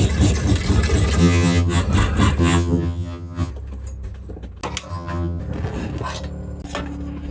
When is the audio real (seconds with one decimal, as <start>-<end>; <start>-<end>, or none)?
0.0-1.2; 1.8-2.4; 3.5-4.9; 5.4-7.3